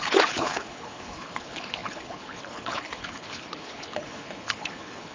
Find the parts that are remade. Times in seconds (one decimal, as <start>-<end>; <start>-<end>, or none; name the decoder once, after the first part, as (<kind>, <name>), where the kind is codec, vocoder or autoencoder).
0.0-5.1 (codec, HILCodec)